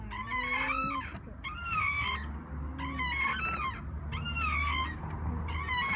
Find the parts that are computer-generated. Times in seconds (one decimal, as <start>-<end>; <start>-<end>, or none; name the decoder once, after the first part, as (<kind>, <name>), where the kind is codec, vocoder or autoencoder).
none